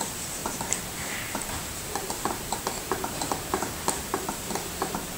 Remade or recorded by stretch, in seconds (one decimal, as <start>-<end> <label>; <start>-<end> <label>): 0.0-5.2 remade